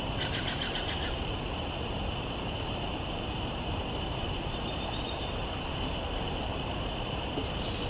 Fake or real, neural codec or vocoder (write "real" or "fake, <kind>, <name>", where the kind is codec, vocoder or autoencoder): fake, vocoder, BigVGAN v2